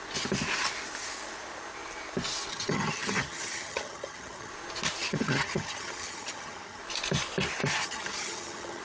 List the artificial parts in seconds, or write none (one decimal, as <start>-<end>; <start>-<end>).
2.5-4.5; 5.0-6.8; 7.8-8.8